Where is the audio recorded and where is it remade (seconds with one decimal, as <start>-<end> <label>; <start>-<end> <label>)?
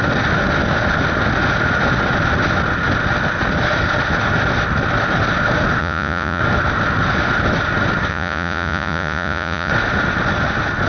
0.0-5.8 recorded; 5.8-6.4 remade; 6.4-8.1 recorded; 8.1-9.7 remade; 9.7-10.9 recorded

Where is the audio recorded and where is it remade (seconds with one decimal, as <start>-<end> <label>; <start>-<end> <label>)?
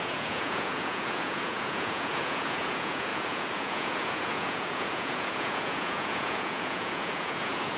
0.0-7.8 remade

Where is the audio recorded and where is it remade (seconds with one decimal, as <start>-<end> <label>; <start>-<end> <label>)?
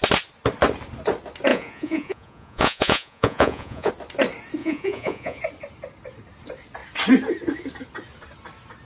0.0-1.5 recorded; 1.5-3.9 remade; 3.9-4.6 recorded; 4.6-5.4 remade; 5.4-8.9 recorded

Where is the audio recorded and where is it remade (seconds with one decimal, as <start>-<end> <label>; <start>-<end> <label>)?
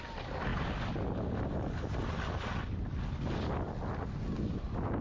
0.0-5.0 recorded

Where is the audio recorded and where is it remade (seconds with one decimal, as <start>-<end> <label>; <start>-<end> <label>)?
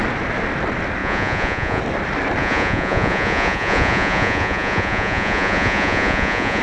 0.0-1.0 recorded; 1.0-1.8 remade; 1.8-2.4 recorded; 2.4-6.6 remade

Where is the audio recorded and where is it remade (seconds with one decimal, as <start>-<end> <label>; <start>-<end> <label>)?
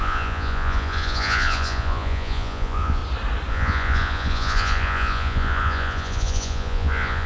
0.0-3.0 remade; 3.0-3.5 recorded; 3.5-7.3 remade